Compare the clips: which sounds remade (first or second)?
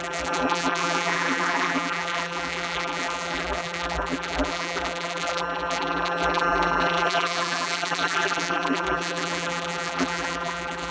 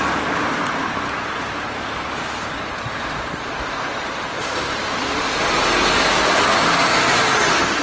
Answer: first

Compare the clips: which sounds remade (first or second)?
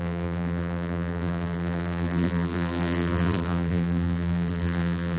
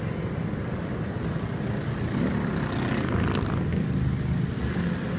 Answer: first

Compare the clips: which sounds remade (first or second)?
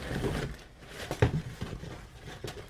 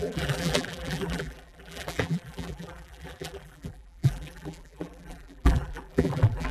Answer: second